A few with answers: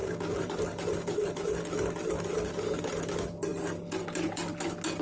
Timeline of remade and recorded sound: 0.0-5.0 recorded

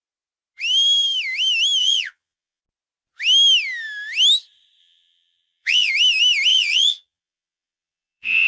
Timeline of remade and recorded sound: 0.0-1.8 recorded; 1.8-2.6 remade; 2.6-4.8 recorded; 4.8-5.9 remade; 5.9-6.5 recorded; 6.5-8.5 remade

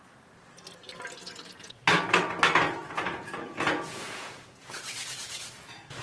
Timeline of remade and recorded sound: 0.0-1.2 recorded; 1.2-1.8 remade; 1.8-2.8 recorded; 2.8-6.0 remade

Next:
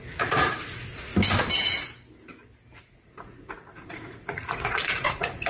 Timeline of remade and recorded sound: 0.0-1.1 remade; 1.1-2.8 recorded; 2.8-5.5 remade